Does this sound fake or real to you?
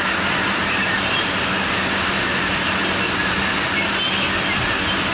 real